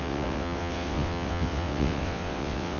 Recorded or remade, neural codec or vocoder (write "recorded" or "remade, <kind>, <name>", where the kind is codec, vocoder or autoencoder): remade, vocoder, WaveNeXt